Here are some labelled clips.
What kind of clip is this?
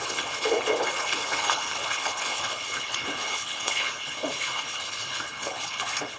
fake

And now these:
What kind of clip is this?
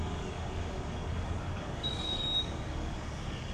fake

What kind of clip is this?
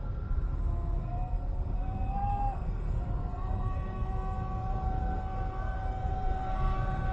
fake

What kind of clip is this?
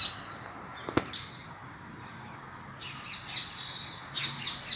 real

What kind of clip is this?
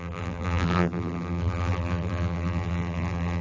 fake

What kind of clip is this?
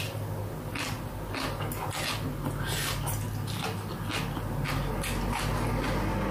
real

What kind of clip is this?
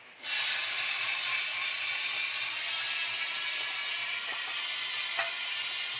real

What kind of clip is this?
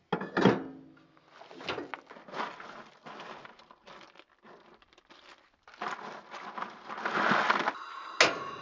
real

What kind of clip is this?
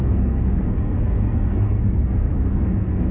fake